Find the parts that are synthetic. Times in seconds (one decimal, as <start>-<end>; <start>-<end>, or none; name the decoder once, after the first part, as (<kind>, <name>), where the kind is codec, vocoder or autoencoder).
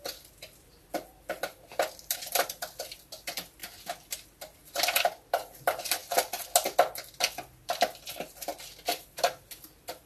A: 0.0-3.6 (vocoder, BigVGAN v2); 5.3-6.0; 7.6-8.5; 9.0-10.1